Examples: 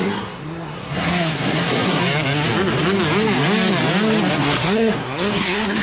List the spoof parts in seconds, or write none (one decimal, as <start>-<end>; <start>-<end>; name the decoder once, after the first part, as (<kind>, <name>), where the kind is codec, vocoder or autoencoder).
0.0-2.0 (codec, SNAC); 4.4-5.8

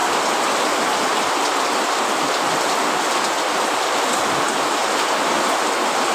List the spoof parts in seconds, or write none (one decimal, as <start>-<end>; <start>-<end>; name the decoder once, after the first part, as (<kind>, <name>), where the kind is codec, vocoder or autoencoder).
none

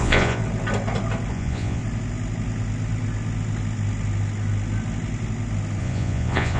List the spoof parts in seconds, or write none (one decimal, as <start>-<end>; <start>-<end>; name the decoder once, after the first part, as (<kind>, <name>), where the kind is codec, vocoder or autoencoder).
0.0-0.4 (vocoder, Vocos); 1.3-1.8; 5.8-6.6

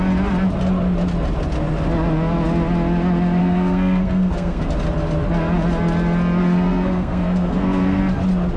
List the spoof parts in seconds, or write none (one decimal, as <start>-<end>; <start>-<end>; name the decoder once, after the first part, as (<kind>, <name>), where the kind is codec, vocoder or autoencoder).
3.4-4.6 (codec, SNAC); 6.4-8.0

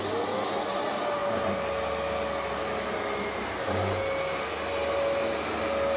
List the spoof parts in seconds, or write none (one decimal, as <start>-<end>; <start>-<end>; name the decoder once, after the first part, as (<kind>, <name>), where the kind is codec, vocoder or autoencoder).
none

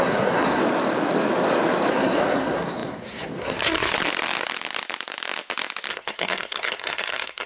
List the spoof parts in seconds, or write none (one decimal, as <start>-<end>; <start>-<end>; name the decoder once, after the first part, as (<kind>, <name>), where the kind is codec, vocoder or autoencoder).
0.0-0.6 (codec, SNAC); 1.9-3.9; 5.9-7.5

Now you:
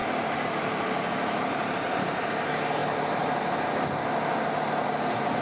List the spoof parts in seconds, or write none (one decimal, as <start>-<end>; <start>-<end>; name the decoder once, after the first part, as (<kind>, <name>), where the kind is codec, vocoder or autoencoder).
none

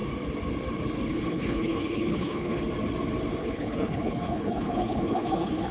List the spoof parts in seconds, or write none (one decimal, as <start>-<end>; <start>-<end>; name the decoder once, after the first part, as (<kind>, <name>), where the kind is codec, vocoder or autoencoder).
1.1-2.6 (codec, HILCodec); 3.4-5.7